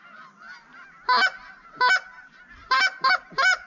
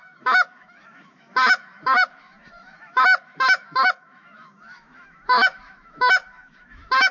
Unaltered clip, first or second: first